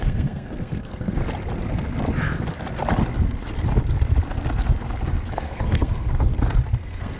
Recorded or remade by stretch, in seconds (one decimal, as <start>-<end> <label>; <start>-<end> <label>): 0.0-1.2 remade; 1.2-5.3 recorded; 5.3-6.3 remade; 6.3-6.8 recorded; 6.8-7.2 remade